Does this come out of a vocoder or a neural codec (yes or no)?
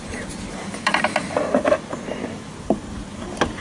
no